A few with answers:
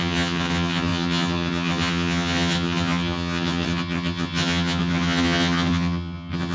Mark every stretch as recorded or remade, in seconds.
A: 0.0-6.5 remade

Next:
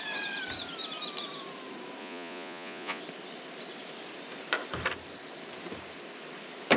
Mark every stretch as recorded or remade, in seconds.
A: 0.0-2.0 recorded; 2.0-3.0 remade; 3.0-6.8 recorded